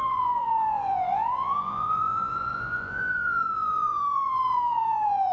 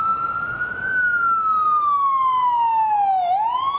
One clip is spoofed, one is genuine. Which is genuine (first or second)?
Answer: second